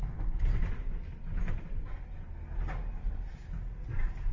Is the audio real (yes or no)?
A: yes